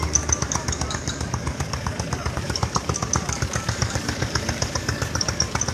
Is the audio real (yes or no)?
no